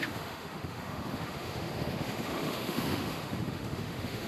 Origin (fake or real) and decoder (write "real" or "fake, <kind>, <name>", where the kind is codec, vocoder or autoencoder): fake, autoencoder, DAC-VAE